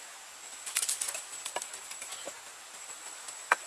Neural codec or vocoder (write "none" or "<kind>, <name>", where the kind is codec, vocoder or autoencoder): none